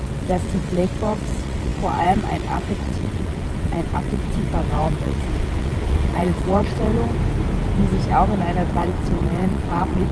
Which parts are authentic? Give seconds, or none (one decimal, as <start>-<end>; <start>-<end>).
6.9-8.7